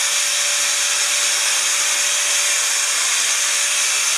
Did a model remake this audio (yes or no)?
no